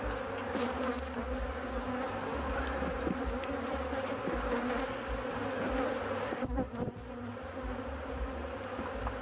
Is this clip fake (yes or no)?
no